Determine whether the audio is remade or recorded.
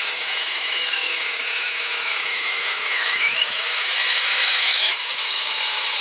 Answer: remade